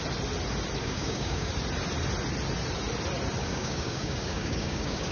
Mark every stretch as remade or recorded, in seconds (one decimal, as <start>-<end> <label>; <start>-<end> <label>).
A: 0.0-0.8 recorded; 0.8-1.5 remade; 1.5-3.4 recorded; 3.4-5.1 remade